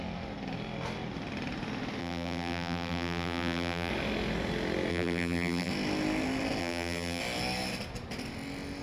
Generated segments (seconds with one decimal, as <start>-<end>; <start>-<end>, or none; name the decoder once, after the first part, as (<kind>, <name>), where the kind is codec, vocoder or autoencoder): 2.0-3.9 (vocoder, BigVGAN v2); 4.9-5.7; 6.6-7.2